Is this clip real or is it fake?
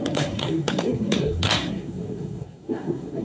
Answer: fake